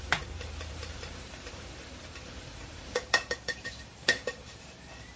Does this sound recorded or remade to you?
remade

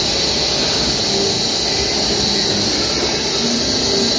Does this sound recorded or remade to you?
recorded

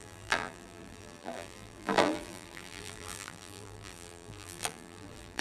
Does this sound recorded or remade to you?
remade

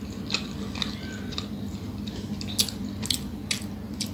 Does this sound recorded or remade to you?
recorded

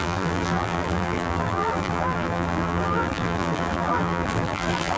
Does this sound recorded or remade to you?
remade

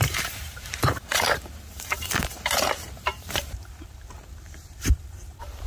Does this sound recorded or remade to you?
remade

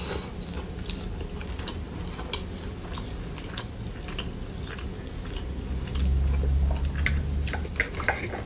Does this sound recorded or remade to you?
recorded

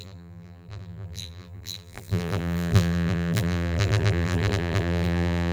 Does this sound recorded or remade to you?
remade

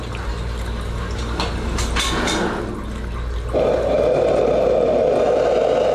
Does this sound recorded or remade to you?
recorded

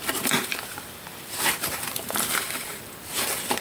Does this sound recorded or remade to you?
remade